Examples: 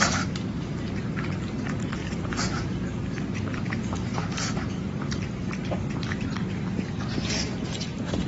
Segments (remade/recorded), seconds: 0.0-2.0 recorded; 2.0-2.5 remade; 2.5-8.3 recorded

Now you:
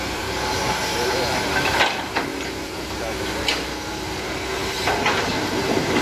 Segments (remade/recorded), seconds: 0.0-6.0 recorded

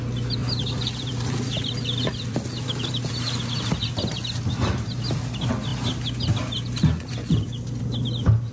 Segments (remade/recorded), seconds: 0.0-0.4 recorded; 0.4-3.1 remade; 3.1-8.5 recorded